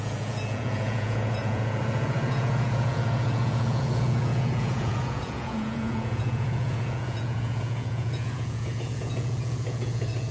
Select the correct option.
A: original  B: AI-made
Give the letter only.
B